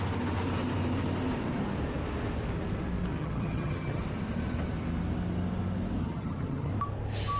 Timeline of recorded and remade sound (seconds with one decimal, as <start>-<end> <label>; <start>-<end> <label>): 0.0-3.1 recorded; 3.1-4.0 remade; 4.0-6.0 recorded; 6.0-6.7 remade; 6.7-7.4 recorded